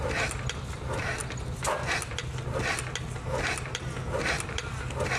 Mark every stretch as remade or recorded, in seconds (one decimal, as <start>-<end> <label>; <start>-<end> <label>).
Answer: 0.0-5.2 recorded